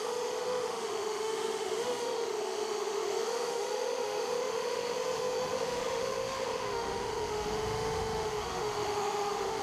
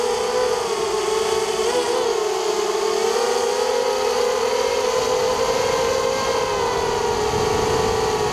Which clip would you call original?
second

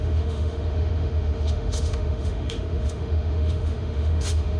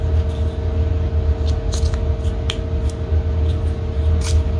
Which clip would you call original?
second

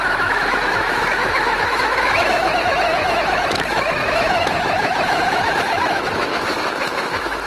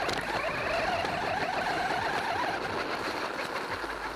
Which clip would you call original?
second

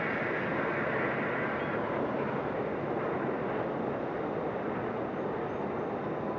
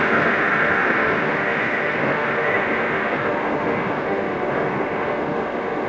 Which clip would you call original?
first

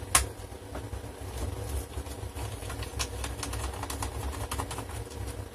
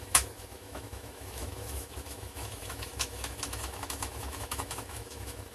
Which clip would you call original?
first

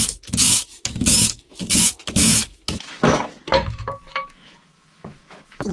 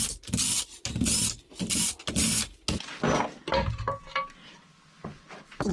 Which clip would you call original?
second